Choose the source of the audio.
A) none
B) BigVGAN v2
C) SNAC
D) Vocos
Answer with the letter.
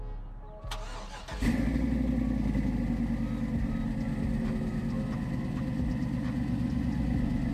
A